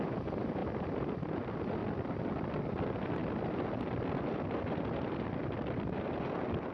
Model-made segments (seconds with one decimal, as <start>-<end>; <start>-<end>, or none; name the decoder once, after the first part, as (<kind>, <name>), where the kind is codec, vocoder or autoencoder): 0.0-1.8 (vocoder, BigVGAN v2); 2.5-3.2; 5.3-6.7